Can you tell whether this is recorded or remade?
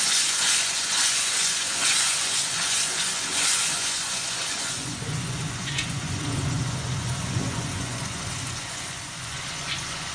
remade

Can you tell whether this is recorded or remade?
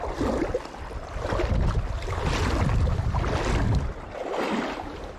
recorded